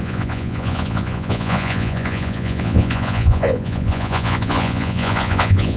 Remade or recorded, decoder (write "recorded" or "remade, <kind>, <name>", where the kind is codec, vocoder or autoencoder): remade, vocoder, Vocos